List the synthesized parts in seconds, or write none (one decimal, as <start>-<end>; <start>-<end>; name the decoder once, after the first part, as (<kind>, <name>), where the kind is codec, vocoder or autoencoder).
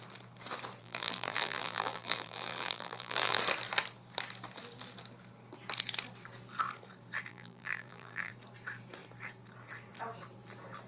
0.8-3.4 (vocoder, BigVGAN v2); 7.3-8.3